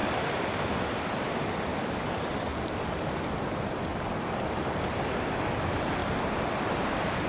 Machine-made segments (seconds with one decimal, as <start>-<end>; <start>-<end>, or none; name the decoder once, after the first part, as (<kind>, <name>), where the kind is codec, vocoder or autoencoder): none